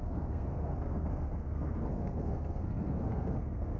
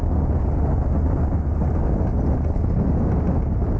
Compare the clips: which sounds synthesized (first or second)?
first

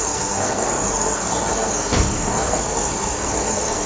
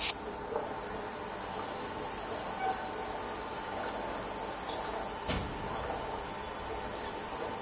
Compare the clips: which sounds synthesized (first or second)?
first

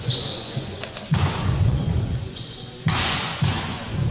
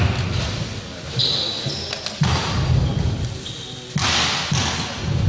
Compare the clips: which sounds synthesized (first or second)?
first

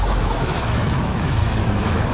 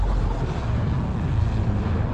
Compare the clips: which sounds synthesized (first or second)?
first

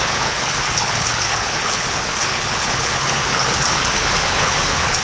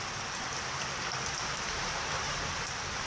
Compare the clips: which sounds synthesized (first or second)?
first